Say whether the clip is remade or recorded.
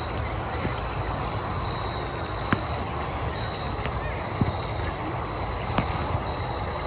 recorded